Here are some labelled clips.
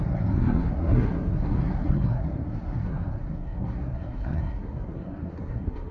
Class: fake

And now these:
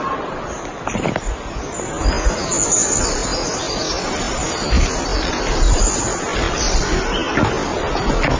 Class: real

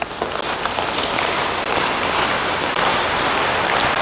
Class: real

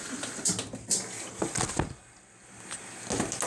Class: real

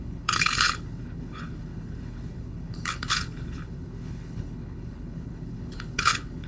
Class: fake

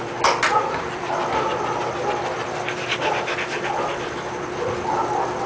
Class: real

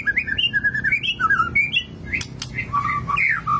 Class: real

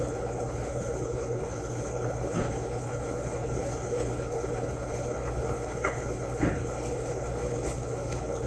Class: fake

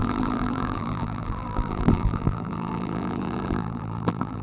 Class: fake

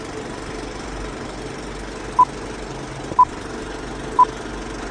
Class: real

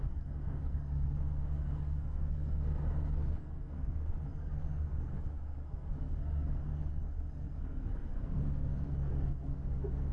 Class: fake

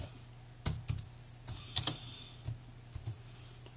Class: real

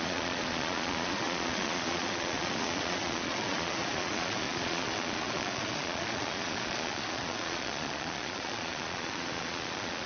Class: fake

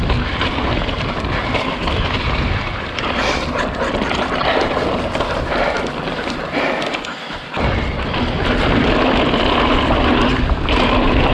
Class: real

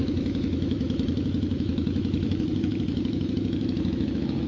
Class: fake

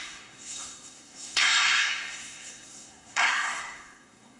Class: fake